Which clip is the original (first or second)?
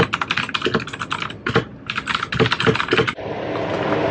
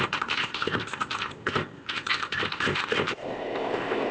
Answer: first